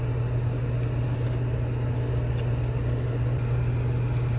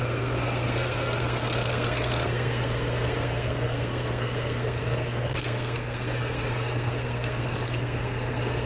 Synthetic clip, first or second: second